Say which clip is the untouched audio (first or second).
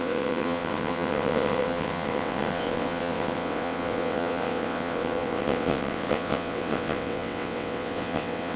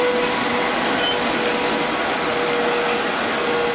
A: second